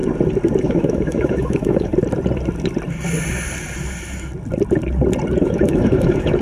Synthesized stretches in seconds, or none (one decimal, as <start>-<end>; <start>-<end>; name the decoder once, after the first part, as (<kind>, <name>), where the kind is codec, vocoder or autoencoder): 0.6-1.9 (autoencoder, DAC-VAE); 5.4-6.4